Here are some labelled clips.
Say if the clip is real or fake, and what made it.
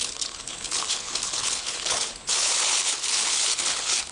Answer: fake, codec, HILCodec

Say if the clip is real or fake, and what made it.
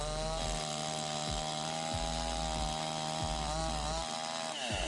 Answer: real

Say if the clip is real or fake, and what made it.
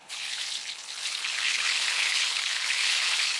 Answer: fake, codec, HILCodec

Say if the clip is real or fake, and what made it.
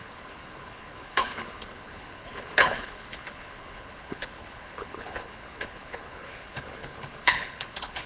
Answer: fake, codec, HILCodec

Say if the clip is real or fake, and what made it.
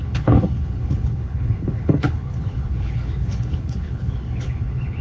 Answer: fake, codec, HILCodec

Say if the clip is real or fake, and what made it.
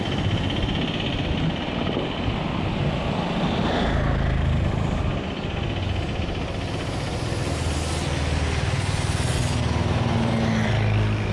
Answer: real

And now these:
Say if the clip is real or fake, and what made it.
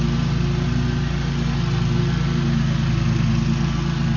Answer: real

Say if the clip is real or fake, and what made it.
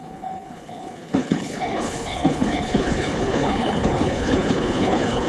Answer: fake, codec, HILCodec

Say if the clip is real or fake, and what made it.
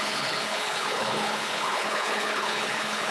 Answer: fake, codec, HILCodec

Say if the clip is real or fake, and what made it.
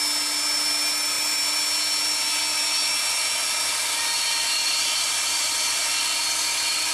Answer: real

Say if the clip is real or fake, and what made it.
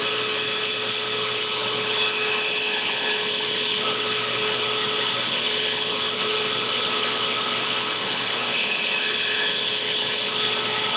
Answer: fake, codec, HILCodec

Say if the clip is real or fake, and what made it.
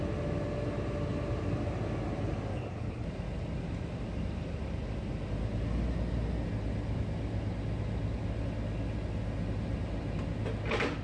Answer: real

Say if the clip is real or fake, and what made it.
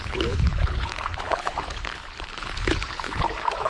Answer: fake, codec, HILCodec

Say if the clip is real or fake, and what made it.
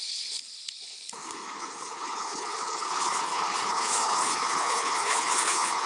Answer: fake, codec, HILCodec